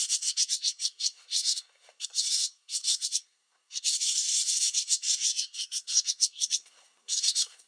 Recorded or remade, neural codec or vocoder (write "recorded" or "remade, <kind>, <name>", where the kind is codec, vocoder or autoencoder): remade, codec, SNAC